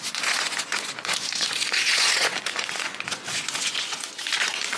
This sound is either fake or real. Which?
fake